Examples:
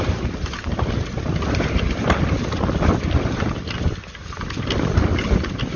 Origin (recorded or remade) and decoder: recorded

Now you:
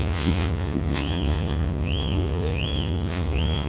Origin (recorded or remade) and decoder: remade, vocoder, Vocos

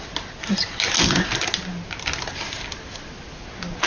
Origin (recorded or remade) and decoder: recorded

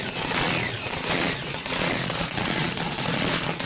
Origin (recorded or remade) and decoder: remade, vocoder, Vocos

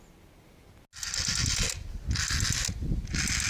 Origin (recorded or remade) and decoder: recorded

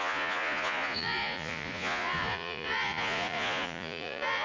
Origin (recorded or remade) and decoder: remade, vocoder, Vocos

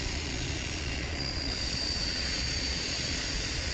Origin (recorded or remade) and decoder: remade, vocoder, Vocos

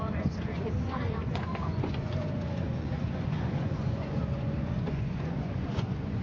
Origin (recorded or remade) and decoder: remade, vocoder, Vocos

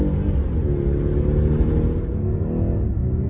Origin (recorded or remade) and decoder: recorded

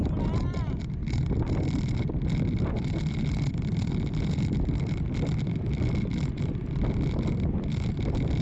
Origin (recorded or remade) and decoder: recorded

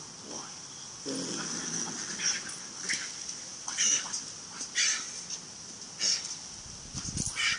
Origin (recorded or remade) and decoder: recorded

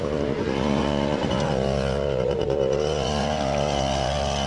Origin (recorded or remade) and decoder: remade, vocoder, Vocos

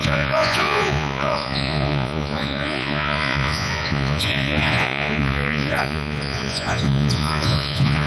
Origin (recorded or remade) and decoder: remade, vocoder, Vocos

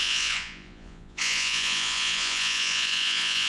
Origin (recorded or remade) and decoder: remade, vocoder, Vocos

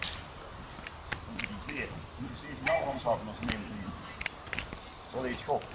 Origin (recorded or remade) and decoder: recorded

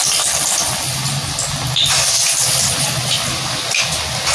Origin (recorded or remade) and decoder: recorded